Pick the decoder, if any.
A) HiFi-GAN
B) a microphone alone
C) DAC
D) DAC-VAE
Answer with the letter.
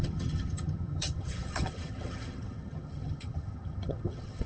A